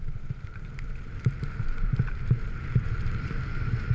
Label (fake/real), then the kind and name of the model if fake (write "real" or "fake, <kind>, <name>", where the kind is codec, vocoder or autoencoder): fake, vocoder, BigVGAN v2